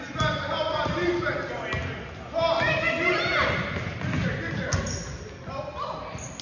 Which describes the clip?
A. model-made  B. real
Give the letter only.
B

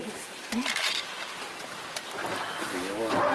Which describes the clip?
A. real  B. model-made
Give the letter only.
A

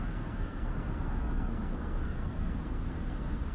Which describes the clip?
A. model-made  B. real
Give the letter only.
A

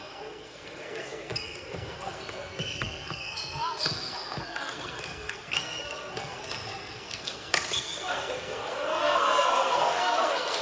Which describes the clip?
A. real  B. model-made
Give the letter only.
B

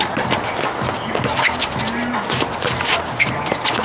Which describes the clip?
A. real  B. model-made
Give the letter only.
A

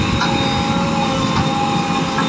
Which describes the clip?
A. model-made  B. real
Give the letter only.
B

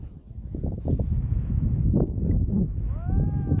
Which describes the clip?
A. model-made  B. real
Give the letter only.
A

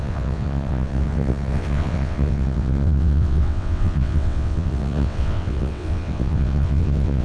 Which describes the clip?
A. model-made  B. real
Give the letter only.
A